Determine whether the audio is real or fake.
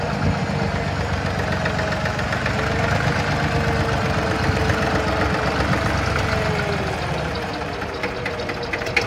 real